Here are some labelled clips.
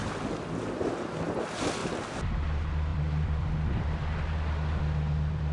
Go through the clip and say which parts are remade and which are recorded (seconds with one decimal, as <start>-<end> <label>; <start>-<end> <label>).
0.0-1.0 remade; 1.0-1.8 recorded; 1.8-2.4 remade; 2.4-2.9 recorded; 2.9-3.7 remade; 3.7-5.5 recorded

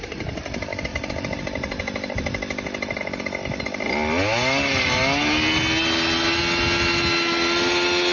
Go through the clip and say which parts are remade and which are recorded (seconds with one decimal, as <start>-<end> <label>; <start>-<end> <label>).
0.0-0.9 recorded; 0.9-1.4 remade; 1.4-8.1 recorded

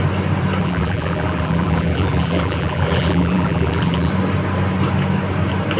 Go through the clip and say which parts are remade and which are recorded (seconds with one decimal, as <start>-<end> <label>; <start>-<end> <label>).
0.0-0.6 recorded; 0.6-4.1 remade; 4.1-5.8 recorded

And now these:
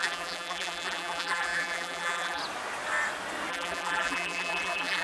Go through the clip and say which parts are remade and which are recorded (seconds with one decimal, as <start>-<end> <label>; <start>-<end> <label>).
0.0-2.4 remade; 2.4-3.5 recorded; 3.5-5.0 remade

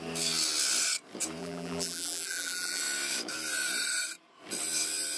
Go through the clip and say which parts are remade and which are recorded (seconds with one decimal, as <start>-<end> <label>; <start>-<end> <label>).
0.0-1.4 recorded; 1.4-2.8 remade; 2.8-5.2 recorded